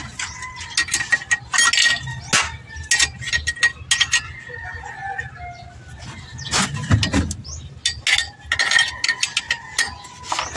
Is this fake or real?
real